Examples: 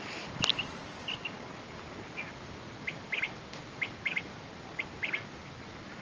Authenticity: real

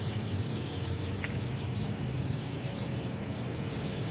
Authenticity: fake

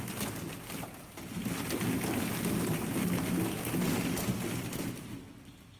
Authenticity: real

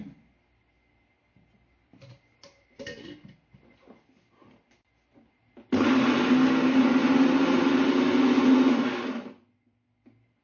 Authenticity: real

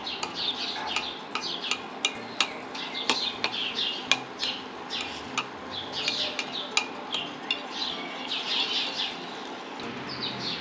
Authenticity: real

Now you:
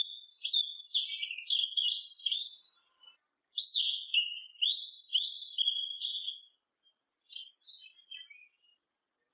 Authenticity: real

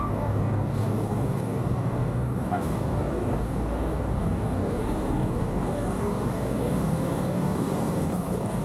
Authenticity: fake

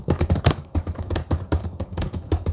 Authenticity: fake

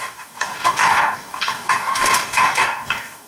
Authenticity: fake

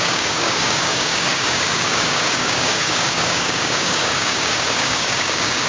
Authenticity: fake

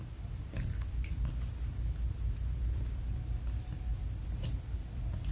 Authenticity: real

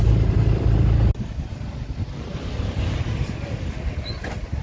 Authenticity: real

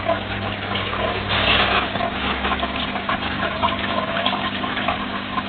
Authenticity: fake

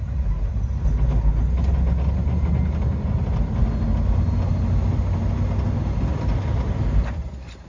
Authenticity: real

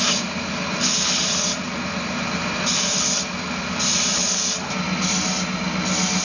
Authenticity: real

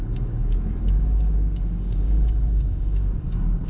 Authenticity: fake